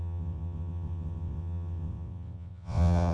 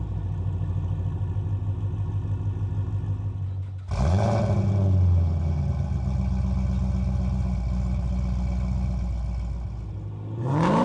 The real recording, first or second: second